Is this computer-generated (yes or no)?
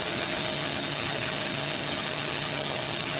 yes